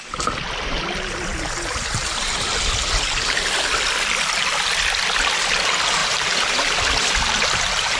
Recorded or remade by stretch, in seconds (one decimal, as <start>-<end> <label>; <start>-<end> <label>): 0.0-1.3 recorded; 1.3-2.5 remade; 2.5-6.0 recorded; 6.0-6.8 remade; 6.8-8.0 recorded